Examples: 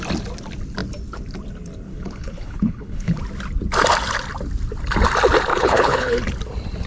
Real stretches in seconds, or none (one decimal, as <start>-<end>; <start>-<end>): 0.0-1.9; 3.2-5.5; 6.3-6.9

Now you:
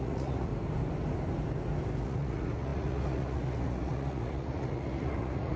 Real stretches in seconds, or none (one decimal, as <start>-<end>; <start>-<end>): 0.5-2.0

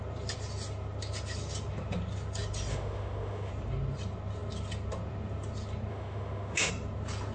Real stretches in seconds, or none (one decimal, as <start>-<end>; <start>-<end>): 0.0-2.7; 3.5-5.9; 6.7-7.3

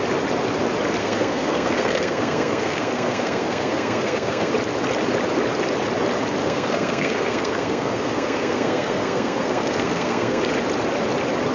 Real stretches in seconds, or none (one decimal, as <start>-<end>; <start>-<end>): 0.0-1.0; 4.5-6.4; 10.4-11.5

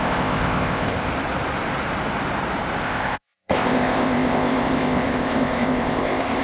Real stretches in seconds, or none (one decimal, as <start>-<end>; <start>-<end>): 1.1-2.8

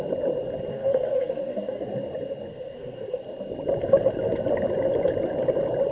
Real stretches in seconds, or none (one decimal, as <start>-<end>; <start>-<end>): 0.0-0.7; 1.9-2.5; 3.2-5.9

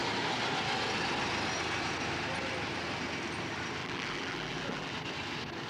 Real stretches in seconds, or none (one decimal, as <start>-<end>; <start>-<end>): 0.0-3.8; 4.9-5.7